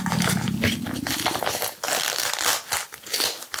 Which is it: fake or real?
real